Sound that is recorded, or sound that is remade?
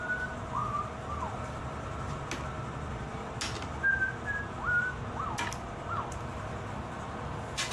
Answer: recorded